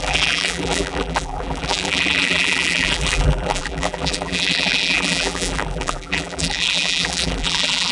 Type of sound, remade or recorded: remade